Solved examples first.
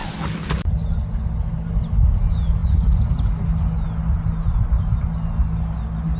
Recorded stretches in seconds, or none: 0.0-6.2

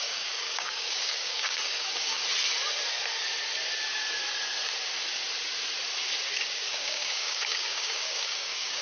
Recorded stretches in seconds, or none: 2.2-6.4

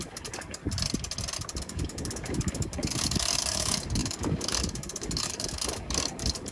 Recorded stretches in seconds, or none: 0.6-1.6

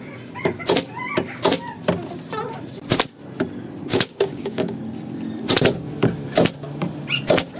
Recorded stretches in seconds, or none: 0.0-3.9; 4.8-7.6

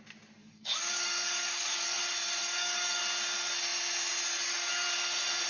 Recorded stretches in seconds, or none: 0.0-0.4; 2.0-2.4; 3.0-5.5

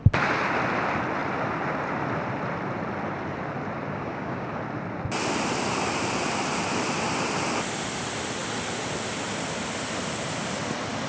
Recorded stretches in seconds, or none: 0.0-3.9; 4.5-11.1

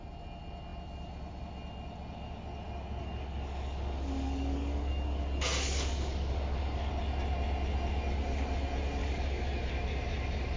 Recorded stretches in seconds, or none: 0.0-3.0; 6.9-9.0; 9.7-10.6